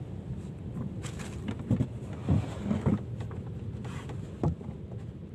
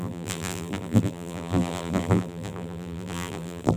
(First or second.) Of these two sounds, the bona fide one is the first